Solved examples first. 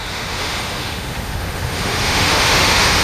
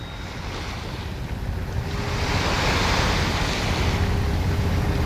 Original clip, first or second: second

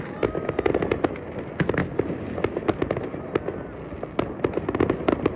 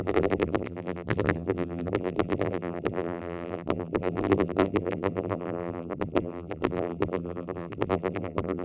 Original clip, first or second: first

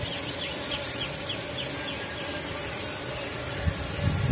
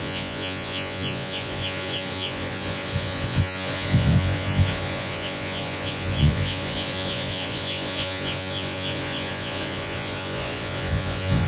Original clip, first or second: first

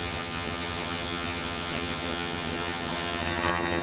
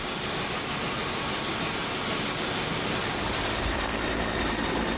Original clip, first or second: second